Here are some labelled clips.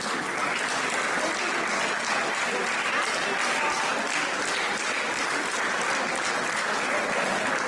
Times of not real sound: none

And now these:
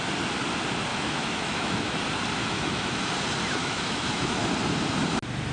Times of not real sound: 0.9-2.0 (autoencoder, DAC-VAE); 2.4-3.1; 3.6-4.4

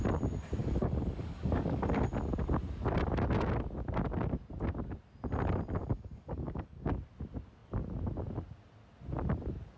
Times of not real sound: 0.6-2.1 (codec, DAC); 5.8-6.9

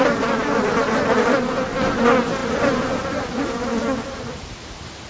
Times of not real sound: none

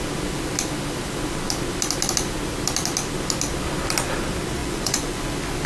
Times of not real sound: 4.6-5.2 (vocoder, Vocos)

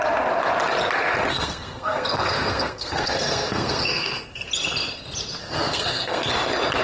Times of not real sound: 1.3-4.5 (codec, SNAC); 5.4-6.3

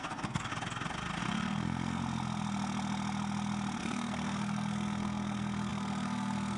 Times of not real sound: 0.0-0.5 (codec, SNAC); 1.2-2.0; 3.8-6.6

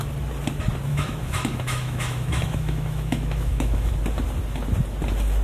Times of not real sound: 0.9-3.9 (autoencoder, DAC-VAE)